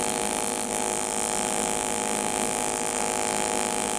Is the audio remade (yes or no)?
no